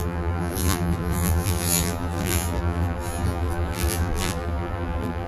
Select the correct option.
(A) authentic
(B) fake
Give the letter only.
B